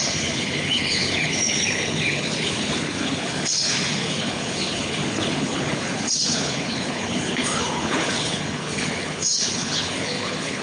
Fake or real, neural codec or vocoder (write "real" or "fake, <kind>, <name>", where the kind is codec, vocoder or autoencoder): fake, codec, HILCodec